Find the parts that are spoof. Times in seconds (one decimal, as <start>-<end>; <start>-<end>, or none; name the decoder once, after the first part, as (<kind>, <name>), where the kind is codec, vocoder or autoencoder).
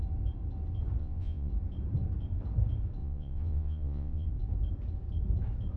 1.0-1.5 (vocoder, Vocos); 3.0-4.3